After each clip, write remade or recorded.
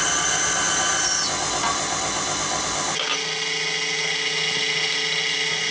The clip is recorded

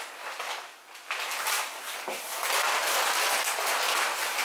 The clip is recorded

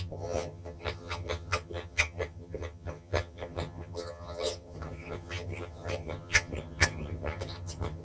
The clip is remade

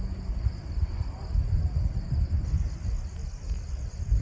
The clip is recorded